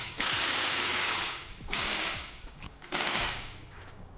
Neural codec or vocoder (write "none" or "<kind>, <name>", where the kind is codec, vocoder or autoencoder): codec, DAC